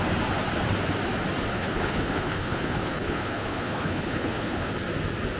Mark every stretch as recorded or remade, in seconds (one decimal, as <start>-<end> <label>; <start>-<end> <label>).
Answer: 0.0-1.5 recorded; 1.5-4.7 remade; 4.7-5.4 recorded